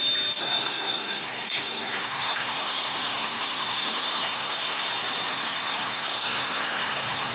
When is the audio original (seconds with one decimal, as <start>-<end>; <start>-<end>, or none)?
0.0-0.4; 4.8-5.3